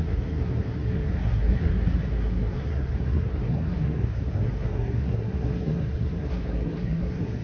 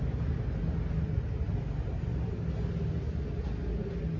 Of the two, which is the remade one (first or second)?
first